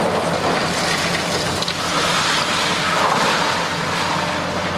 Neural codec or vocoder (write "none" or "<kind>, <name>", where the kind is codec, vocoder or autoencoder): none